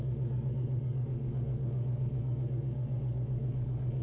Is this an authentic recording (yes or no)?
no